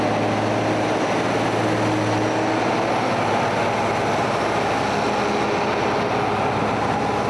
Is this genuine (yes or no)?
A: yes